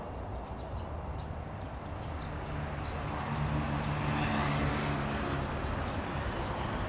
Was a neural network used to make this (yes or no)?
no